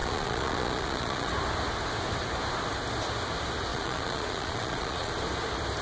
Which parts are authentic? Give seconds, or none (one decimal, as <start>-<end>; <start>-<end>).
1.3-3.7; 5.1-5.8